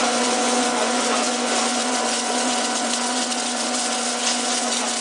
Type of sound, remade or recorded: remade